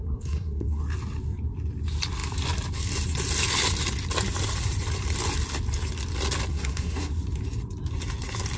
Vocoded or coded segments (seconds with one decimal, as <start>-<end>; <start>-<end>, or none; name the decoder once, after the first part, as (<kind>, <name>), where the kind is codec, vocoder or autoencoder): 0.0-0.8 (codec, SNAC); 6.5-7.1